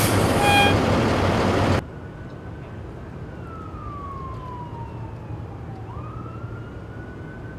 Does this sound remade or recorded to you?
recorded